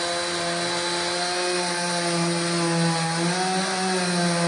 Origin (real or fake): real